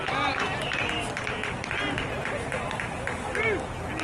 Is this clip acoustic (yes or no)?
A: yes